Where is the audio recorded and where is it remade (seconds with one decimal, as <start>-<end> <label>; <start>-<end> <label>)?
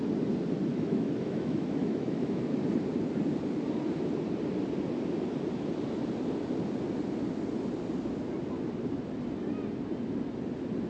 0.0-0.7 recorded; 0.7-2.6 remade; 2.6-10.9 recorded